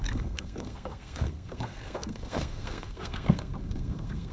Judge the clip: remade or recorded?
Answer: remade